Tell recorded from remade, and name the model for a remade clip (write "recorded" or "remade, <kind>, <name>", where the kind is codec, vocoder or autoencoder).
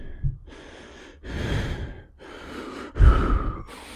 recorded